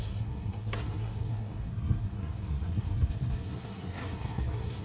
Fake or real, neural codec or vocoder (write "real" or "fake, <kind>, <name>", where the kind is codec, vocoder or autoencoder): fake, codec, SNAC